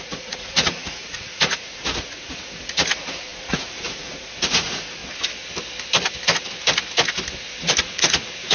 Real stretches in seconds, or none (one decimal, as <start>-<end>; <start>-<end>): 5.0-7.8